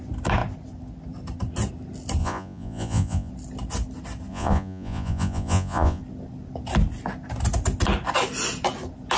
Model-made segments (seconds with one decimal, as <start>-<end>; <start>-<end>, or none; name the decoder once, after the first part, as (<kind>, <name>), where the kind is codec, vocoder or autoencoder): 2.2-3.3 (vocoder, Vocos); 4.3-6.0